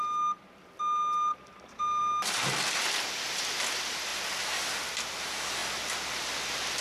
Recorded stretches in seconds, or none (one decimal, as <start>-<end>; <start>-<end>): 0.0-6.8